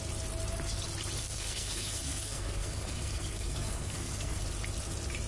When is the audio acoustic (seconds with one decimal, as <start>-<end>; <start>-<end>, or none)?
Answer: 0.0-1.2; 4.4-5.3